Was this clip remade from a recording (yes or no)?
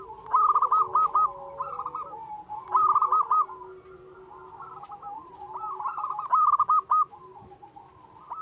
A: no